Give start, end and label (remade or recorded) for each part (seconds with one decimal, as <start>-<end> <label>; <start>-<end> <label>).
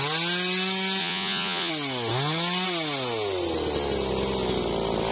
0.0-1.0 recorded; 1.0-1.7 remade; 1.7-5.1 recorded